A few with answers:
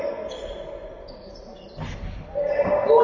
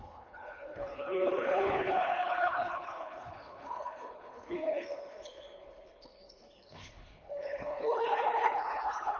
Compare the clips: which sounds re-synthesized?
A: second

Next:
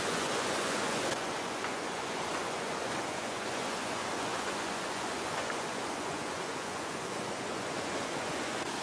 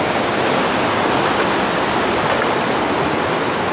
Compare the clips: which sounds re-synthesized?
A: first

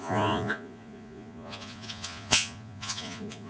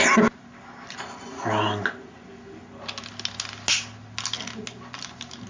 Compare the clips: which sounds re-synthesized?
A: first